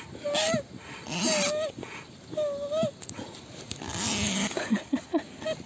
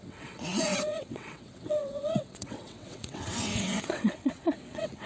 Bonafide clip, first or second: first